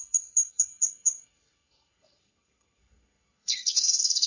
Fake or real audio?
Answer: fake